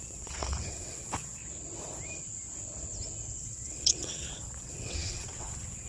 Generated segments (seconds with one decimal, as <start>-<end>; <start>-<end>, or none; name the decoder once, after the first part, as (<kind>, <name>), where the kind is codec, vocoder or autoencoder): 0.0-1.4 (vocoder, WaveNeXt); 3.4-5.9